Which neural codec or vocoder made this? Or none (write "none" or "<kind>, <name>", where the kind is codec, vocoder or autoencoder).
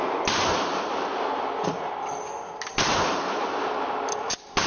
none